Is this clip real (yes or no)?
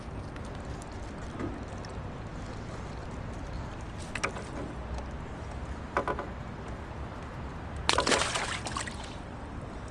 yes